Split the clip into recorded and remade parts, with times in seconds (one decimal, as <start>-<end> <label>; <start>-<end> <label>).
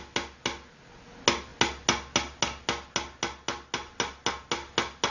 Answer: 0.0-5.1 recorded